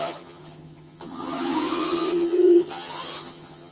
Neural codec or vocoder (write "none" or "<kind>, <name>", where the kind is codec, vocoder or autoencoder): vocoder, HiFi-GAN